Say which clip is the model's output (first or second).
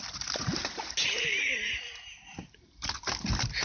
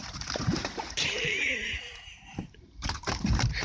second